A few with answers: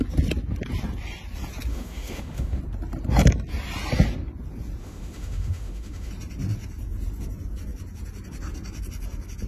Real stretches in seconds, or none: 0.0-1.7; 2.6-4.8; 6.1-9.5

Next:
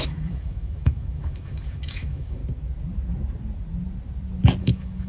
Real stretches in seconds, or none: 2.4-4.6

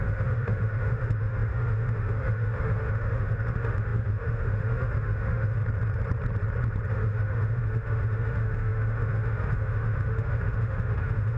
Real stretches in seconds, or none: 5.6-6.9